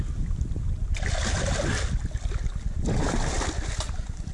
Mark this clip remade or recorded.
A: recorded